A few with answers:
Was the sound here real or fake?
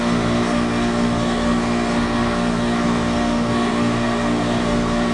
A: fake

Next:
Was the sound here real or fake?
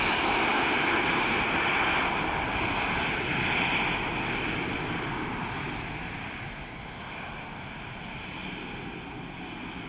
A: real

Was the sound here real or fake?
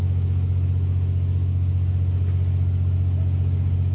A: real